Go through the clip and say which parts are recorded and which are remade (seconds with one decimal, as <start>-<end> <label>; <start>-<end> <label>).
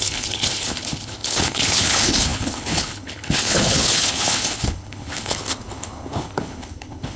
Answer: 0.0-7.2 remade